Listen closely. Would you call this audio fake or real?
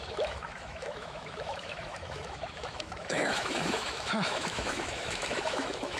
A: fake